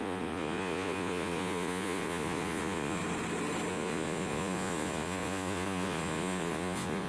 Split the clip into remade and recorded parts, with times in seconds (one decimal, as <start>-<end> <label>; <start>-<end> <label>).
0.0-3.0 remade; 3.0-3.7 recorded; 3.7-7.1 remade